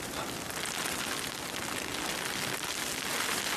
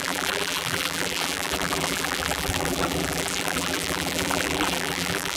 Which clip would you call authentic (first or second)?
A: first